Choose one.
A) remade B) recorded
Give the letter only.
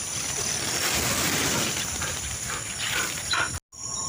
B